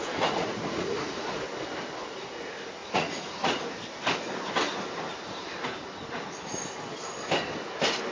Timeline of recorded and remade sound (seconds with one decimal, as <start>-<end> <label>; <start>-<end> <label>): 0.0-1.1 remade; 1.1-2.8 recorded; 2.8-3.6 remade; 3.6-8.1 recorded